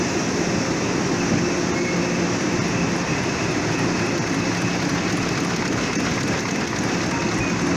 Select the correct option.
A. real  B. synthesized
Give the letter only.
A